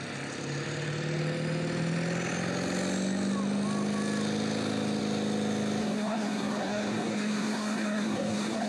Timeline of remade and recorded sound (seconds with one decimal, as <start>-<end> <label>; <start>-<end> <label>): 0.0-5.8 recorded; 5.8-8.7 remade